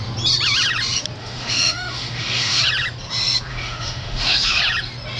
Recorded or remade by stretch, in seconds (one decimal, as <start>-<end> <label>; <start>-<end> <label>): 0.0-1.2 recorded; 1.2-2.6 remade; 2.6-3.5 recorded; 3.5-4.6 remade; 4.6-5.2 recorded

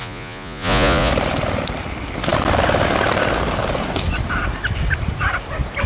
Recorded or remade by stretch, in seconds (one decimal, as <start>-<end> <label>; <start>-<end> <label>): 0.0-1.1 remade; 1.1-5.9 recorded